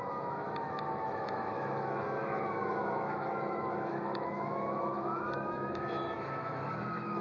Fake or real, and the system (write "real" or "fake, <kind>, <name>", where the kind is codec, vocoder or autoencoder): fake, autoencoder, DAC-VAE